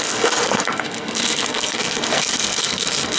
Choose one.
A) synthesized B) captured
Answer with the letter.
A